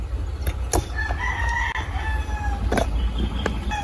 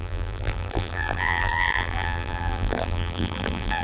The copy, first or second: second